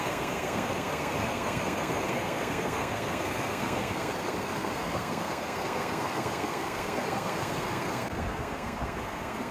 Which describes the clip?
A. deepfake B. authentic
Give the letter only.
A